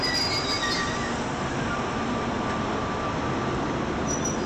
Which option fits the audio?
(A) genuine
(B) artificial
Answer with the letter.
A